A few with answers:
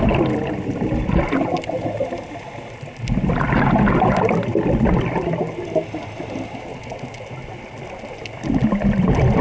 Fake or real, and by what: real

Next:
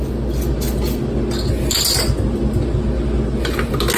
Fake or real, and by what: real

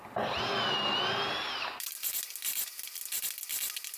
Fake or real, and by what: real